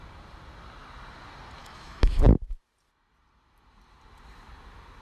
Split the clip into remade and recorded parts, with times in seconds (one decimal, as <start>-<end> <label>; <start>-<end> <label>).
0.0-1.6 recorded; 1.6-2.2 remade; 2.2-5.0 recorded